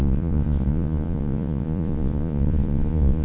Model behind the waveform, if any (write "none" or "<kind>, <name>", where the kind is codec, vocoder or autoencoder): vocoder, Vocos